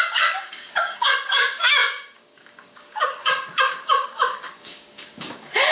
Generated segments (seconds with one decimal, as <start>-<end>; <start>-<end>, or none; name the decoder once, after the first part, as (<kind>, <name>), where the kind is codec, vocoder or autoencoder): 0.0-5.7 (codec, DAC)